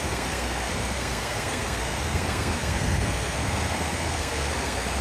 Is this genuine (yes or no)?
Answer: no